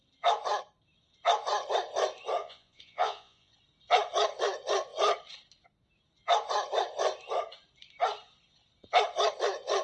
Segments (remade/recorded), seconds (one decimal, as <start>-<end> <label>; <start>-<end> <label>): 0.0-2.4 recorded; 2.4-3.5 remade; 3.5-9.8 recorded